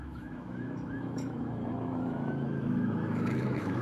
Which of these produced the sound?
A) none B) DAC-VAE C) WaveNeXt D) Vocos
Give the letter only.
B